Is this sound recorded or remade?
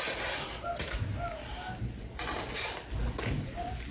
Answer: recorded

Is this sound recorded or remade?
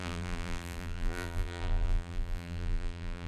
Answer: remade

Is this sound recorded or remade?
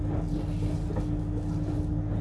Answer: recorded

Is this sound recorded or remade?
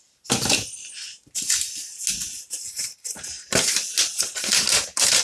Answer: recorded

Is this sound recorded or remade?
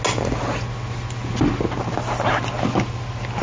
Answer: recorded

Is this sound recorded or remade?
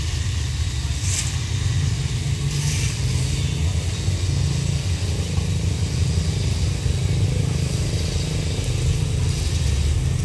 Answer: recorded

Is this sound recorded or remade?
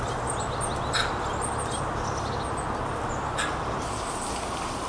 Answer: recorded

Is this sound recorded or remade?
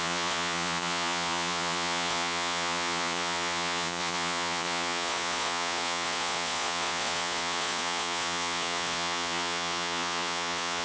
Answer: remade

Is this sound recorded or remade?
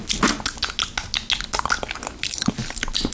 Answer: recorded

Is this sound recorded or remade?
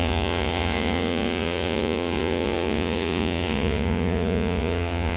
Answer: remade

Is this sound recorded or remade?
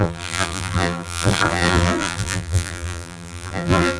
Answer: remade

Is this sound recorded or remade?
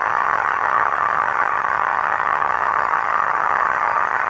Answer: remade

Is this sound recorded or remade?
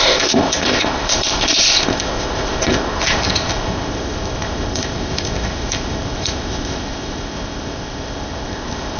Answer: remade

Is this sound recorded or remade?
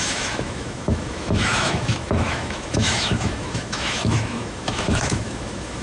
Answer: remade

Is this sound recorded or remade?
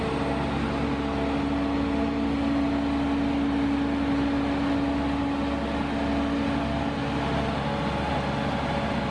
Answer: recorded